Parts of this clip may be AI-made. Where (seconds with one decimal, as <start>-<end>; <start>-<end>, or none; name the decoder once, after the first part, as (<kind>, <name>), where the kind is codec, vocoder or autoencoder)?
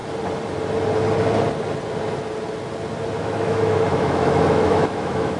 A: 3.2-5.4 (autoencoder, DAC-VAE)